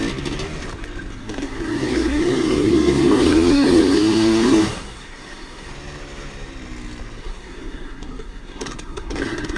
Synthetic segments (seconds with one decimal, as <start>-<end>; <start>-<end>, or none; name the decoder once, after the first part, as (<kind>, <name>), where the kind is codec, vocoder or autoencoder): 1.1-5.7 (codec, SNAC); 7.2-9.6